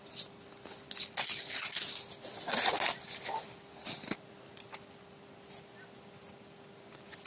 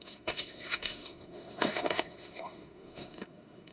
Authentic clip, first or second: first